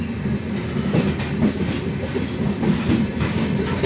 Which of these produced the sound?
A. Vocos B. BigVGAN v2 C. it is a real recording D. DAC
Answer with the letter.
C